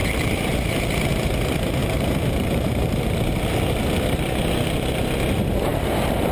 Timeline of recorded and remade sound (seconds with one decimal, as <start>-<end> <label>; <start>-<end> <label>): 0.0-0.5 remade; 0.5-1.8 recorded; 1.8-3.3 remade; 3.3-5.7 recorded; 5.7-6.3 remade